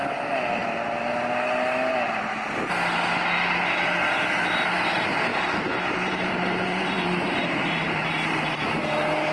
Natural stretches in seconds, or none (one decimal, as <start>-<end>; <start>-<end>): 0.0-5.3; 8.8-9.3

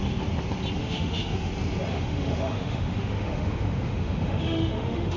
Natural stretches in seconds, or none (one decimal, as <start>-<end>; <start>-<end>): 0.0-0.8; 1.5-1.9

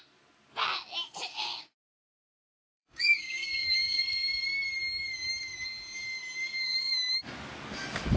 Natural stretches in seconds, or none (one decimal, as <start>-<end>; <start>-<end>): 0.0-1.3; 4.0-6.4; 6.9-8.2

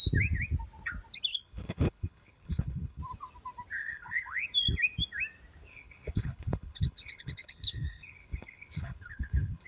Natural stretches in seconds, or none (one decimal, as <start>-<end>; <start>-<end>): 0.0-1.3; 3.0-3.8; 4.4-5.7

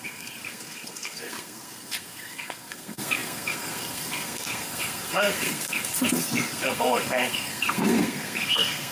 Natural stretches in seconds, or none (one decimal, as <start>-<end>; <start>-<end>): none

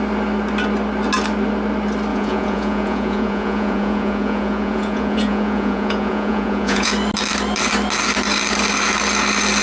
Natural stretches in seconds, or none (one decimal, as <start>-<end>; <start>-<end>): 0.0-2.1; 6.9-9.6